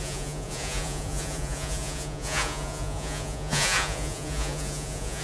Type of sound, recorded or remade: remade